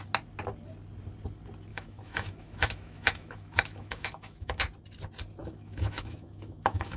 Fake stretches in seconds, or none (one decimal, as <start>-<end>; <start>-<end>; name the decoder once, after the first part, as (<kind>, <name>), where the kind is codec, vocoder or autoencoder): 1.7-4.6 (autoencoder, DAC-VAE); 5.4-7.0